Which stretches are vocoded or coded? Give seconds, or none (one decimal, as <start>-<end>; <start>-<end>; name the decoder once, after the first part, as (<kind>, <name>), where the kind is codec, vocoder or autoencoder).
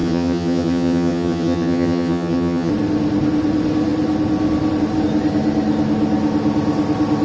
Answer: 0.0-2.7 (vocoder, HiFi-GAN)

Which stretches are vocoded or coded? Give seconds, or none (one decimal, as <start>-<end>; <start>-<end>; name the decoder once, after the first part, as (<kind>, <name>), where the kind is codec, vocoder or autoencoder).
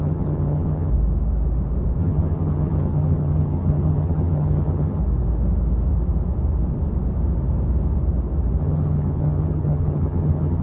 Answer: 0.0-0.9 (vocoder, HiFi-GAN); 2.0-5.0; 8.6-10.6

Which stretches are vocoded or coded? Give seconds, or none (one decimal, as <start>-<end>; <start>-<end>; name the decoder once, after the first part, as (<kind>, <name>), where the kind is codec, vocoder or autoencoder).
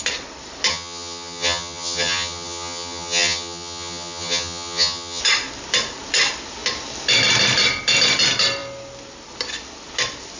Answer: 0.7-5.2 (vocoder, HiFi-GAN)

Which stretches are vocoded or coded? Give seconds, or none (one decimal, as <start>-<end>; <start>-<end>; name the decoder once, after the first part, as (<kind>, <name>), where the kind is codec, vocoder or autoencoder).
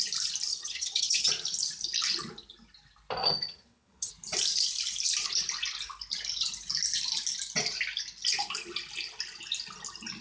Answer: 0.5-1.3 (vocoder, HiFi-GAN); 3.2-4.1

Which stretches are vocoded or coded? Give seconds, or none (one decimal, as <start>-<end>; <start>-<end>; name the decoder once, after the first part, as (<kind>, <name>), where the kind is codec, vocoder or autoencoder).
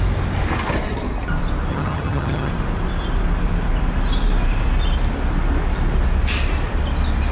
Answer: 1.7-2.5 (vocoder, HiFi-GAN)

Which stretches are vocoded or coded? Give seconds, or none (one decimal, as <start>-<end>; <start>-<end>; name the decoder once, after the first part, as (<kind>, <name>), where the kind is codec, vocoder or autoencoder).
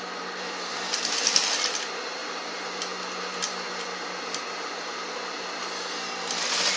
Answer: none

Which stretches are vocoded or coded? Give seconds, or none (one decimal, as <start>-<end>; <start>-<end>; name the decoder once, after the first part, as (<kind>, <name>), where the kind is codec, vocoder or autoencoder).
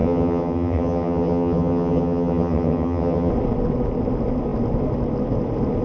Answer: 0.0-3.3 (vocoder, HiFi-GAN)